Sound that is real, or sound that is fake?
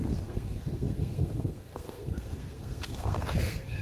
fake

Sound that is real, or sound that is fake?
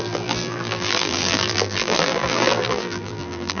fake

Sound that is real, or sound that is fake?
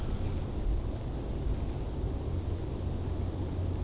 real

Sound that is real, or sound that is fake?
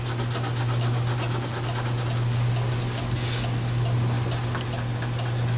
real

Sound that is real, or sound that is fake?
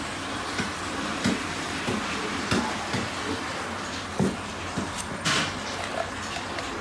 real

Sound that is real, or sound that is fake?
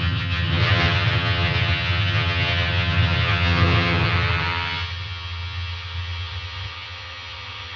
fake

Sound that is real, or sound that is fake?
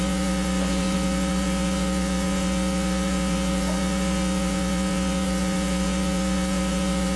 fake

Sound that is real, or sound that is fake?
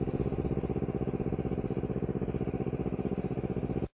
real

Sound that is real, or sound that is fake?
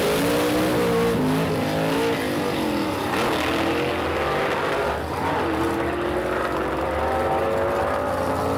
real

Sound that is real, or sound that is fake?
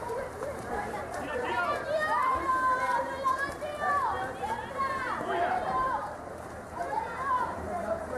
fake